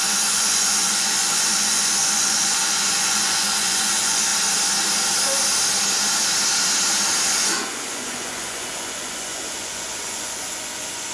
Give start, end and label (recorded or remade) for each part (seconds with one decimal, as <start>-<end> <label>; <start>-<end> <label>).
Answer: 0.0-4.3 remade; 4.3-7.3 recorded; 7.3-11.1 remade